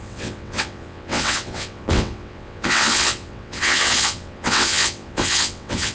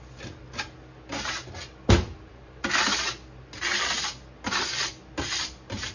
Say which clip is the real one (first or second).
second